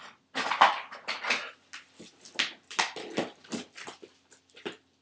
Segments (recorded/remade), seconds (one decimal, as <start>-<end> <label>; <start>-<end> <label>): 0.0-5.0 recorded